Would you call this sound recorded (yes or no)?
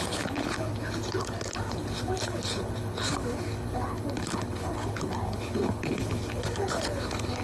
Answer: no